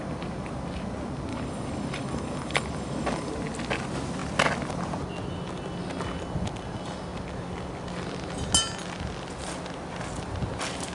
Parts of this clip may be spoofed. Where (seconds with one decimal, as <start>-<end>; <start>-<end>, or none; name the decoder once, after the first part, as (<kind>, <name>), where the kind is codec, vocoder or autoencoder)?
1.3-3.3 (codec, DAC)